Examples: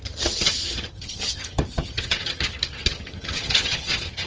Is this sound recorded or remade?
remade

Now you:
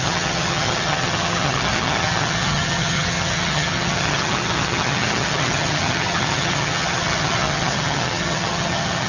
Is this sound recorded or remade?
remade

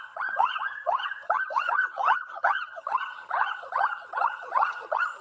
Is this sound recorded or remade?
remade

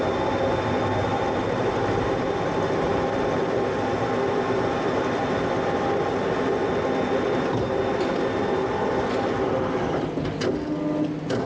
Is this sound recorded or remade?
recorded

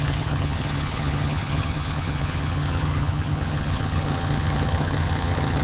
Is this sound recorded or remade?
remade